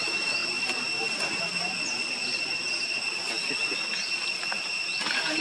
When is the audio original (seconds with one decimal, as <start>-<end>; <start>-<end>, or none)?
0.0-5.4